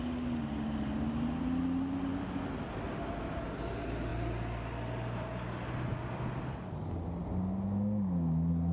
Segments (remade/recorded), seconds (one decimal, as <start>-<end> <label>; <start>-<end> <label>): 0.0-8.7 recorded